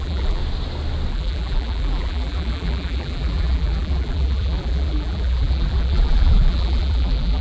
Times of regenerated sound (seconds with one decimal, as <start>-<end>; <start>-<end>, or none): 0.0-0.4; 1.1-7.4

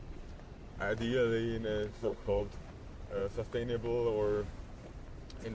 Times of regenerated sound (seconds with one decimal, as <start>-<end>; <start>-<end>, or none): 1.9-2.4

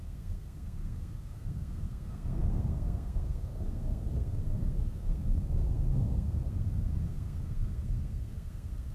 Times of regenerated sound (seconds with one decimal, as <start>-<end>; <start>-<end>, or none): 0.0-8.9

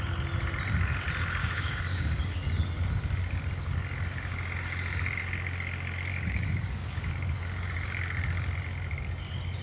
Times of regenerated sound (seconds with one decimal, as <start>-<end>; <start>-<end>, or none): 1.4-2.4; 6.1-7.1

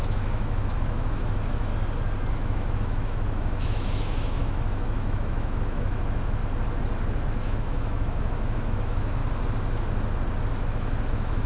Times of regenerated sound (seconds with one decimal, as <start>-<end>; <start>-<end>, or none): 0.0-1.7; 2.3-6.4; 7.3-9.2; 11.1-11.5

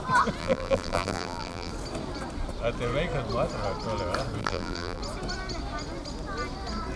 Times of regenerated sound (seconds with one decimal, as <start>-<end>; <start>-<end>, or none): 0.4-1.7; 4.4-5.0

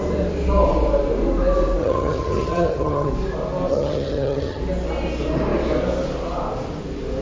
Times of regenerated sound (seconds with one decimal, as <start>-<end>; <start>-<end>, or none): 1.8-3.1; 3.7-4.6

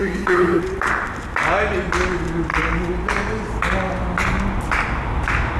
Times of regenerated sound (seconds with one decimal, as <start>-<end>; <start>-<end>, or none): 0.0-0.6